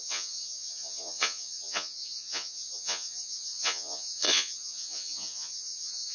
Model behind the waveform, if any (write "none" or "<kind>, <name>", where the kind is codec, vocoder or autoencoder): vocoder, Vocos